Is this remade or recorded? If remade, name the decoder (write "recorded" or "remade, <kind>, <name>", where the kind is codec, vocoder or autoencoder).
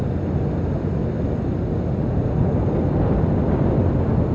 recorded